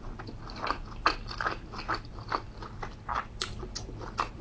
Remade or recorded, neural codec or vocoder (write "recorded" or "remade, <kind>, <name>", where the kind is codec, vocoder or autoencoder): recorded